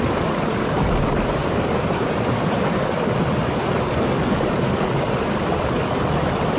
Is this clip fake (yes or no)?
yes